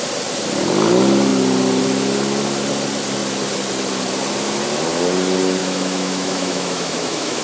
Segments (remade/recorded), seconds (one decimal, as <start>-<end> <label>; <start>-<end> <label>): 0.0-5.6 recorded; 5.6-7.4 remade